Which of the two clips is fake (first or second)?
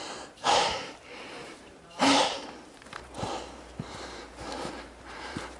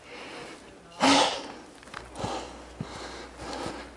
first